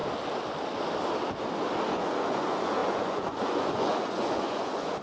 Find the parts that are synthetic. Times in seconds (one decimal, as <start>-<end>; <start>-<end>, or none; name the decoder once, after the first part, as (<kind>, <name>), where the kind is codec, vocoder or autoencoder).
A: 1.9-5.0 (vocoder, Vocos)